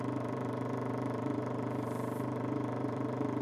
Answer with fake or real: fake